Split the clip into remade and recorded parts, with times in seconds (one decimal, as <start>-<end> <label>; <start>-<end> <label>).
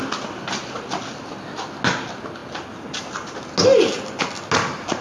0.0-5.0 recorded